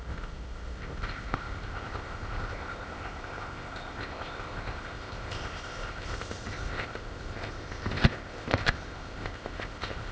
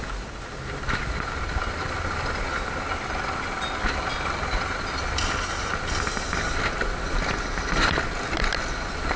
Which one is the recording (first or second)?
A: second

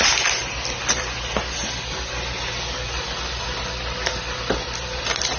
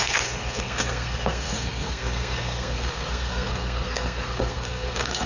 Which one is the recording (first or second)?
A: first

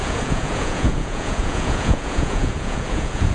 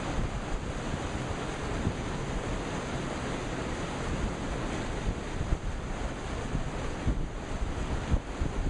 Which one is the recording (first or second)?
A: second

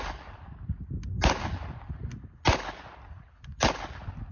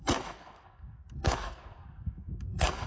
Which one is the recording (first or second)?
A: first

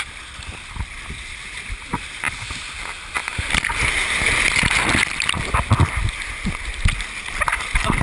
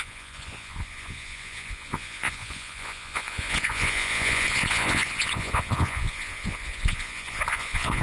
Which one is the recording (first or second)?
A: first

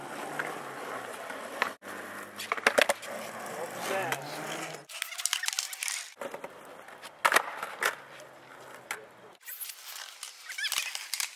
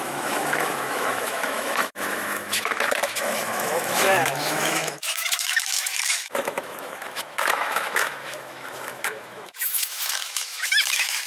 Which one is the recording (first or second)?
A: first